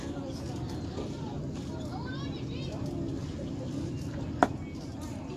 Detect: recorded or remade recorded